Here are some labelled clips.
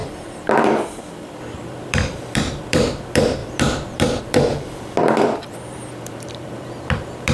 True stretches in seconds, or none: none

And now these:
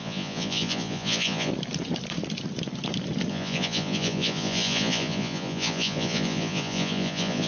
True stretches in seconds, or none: 1.5-3.3

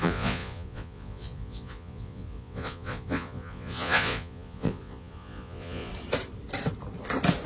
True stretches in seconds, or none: 5.9-7.5

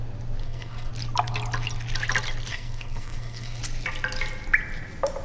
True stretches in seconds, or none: 0.0-0.4; 0.9-2.5; 3.6-5.2

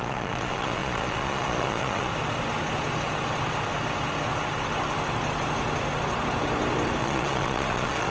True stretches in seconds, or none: 2.1-7.0

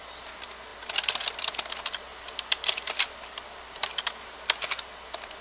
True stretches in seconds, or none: 0.0-5.4